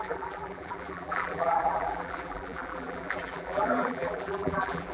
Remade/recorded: remade